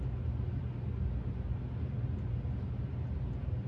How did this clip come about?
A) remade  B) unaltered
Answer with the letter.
B